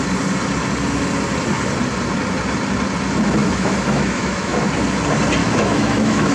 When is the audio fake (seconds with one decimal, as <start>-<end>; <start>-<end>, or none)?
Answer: 3.4-4.7; 5.4-6.3